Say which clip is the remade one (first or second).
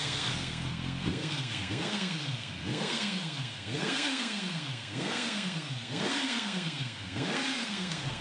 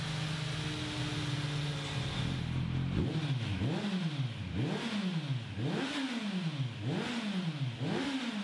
first